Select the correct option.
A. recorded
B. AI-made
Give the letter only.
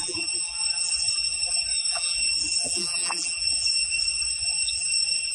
B